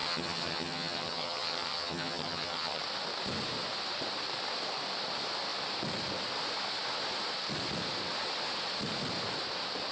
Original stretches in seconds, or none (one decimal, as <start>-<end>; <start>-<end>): 2.8-9.9